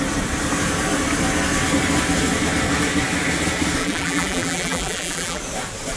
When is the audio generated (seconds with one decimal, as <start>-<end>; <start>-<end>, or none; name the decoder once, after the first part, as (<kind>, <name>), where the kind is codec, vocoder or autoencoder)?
3.8-5.4 (vocoder, BigVGAN v2)